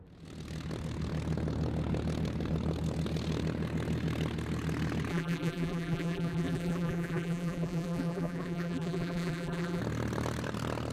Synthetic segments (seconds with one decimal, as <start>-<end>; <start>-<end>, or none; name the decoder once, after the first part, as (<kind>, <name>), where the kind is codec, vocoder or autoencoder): 5.1-9.8 (vocoder, BigVGAN v2)